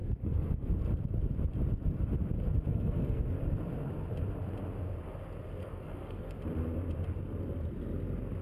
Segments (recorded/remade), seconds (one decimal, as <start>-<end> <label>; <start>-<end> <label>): 0.0-0.7 remade; 0.7-2.7 recorded; 2.7-3.2 remade; 3.2-5.6 recorded; 5.6-6.4 remade; 6.4-8.4 recorded